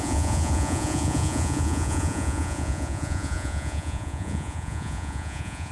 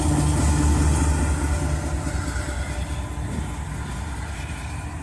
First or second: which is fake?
first